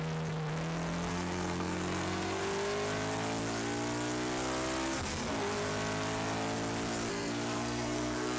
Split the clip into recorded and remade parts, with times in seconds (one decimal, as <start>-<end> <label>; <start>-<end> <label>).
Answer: 0.0-1.1 recorded; 1.1-2.4 remade; 2.4-7.1 recorded; 7.1-8.4 remade